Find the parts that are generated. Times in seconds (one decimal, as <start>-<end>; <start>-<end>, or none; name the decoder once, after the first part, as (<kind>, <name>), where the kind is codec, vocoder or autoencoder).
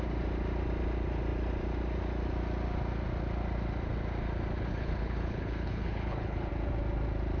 4.7-6.5 (codec, HILCodec)